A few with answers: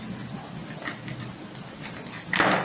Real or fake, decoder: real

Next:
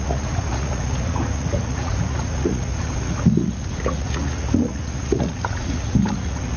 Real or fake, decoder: fake, vocoder, Vocos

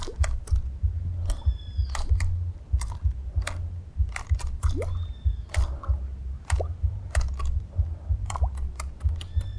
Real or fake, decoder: real